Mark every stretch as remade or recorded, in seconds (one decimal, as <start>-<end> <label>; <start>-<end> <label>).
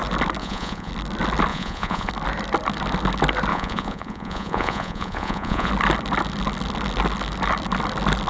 0.0-0.4 recorded; 0.4-0.9 remade; 0.9-1.5 recorded; 1.5-2.1 remade; 2.1-3.5 recorded; 3.5-5.7 remade; 5.7-8.3 recorded